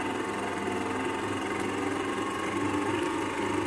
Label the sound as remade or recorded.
recorded